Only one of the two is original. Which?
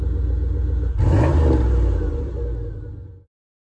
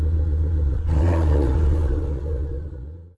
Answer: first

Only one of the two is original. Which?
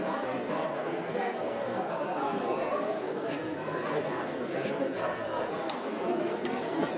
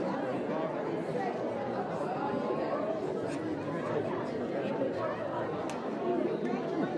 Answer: second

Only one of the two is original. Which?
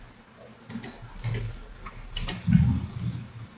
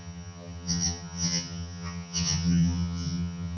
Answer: first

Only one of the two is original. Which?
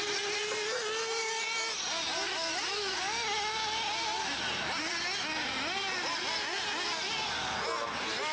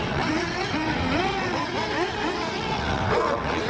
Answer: first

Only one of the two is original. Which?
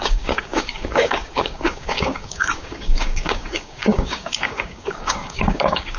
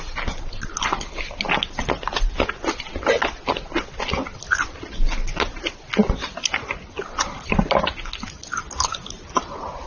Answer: second